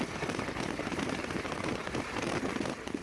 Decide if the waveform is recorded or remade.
recorded